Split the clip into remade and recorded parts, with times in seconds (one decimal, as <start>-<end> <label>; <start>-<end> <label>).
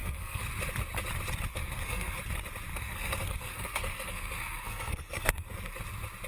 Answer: 0.0-0.5 remade; 0.5-1.5 recorded; 1.5-2.2 remade; 2.2-2.7 recorded; 2.7-5.8 remade; 5.8-6.3 recorded